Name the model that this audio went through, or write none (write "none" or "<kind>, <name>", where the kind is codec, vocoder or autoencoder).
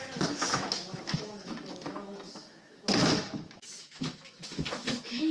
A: autoencoder, DAC-VAE